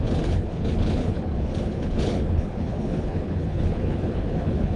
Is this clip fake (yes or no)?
yes